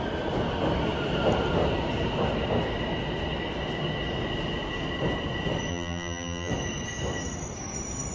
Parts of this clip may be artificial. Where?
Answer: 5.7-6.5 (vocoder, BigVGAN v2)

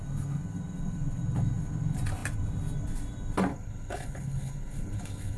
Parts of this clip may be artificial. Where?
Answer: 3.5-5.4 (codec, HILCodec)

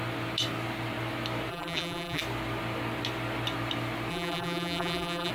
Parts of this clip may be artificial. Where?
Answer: 1.5-2.2 (vocoder, BigVGAN v2); 4.1-5.3

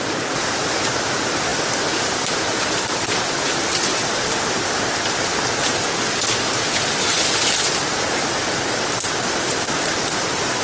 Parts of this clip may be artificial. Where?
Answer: none

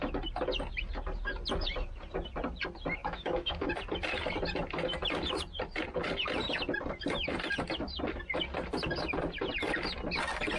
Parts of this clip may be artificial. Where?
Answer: 3.0-3.7 (autoencoder, DAC-VAE)